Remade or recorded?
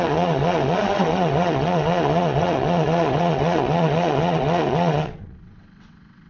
remade